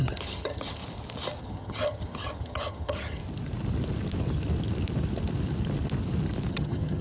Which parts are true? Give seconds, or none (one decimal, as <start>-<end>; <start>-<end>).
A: 0.8-1.4; 3.2-6.5